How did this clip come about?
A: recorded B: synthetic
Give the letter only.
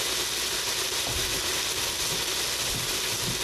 A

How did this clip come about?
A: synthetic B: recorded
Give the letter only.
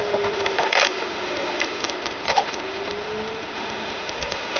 A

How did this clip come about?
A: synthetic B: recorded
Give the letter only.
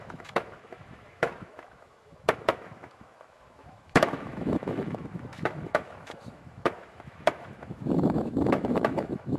A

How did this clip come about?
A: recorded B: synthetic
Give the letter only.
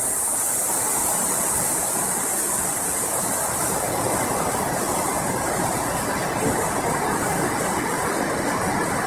A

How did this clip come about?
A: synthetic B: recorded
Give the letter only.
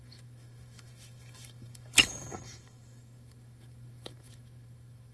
A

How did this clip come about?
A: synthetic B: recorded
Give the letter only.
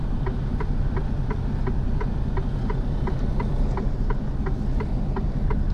B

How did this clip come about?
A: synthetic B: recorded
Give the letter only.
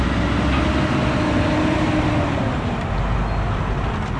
B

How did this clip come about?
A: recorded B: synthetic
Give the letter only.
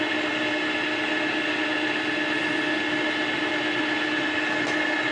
A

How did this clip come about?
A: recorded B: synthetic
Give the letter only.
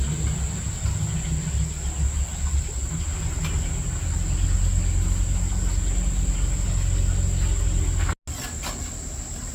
A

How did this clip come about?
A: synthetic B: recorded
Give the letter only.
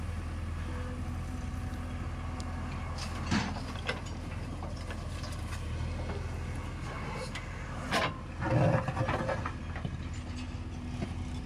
B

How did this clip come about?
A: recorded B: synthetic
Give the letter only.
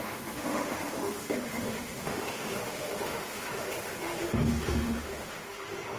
B